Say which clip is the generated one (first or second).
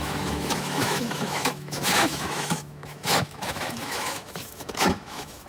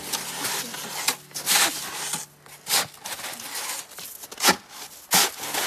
first